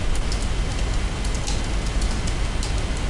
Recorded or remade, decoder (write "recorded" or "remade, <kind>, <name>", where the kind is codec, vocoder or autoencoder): recorded